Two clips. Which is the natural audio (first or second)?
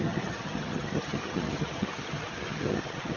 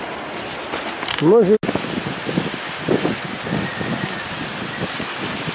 second